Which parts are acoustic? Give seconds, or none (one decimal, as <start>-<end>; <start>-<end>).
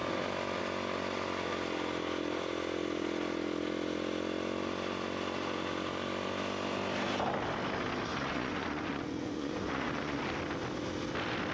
0.0-8.1; 10.2-11.5